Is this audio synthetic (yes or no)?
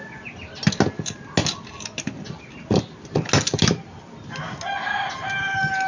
no